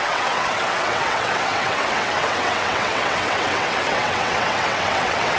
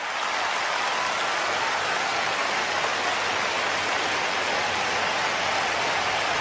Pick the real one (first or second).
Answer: second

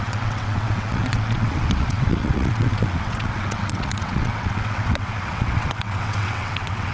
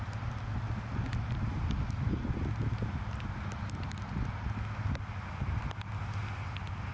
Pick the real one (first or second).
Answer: second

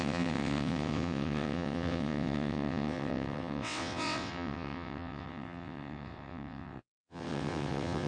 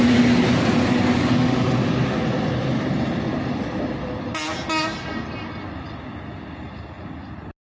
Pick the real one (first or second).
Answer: second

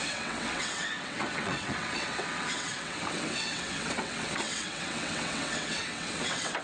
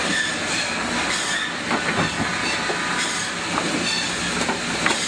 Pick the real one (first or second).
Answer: second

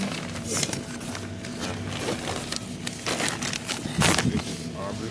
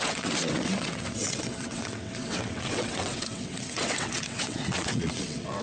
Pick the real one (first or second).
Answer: first